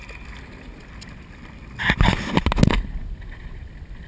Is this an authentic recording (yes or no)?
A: yes